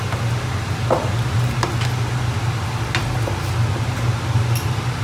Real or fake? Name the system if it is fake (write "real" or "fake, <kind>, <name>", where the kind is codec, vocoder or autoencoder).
real